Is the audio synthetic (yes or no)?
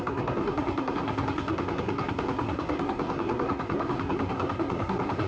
yes